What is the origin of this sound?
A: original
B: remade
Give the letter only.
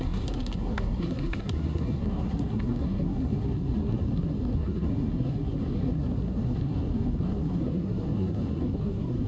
B